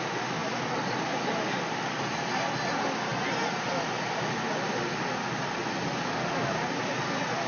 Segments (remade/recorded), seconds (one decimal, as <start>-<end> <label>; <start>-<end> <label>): 0.0-7.5 recorded